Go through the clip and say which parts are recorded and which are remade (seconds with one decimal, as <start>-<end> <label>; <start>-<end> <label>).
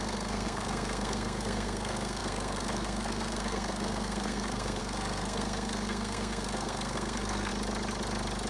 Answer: 0.0-7.5 remade; 7.5-8.5 recorded